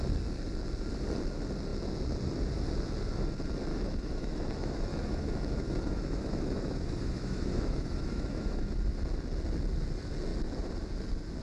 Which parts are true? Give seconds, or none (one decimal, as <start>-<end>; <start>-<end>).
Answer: 0.0-3.7; 8.7-11.4